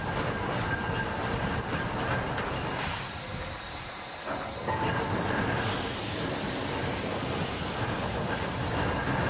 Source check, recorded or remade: recorded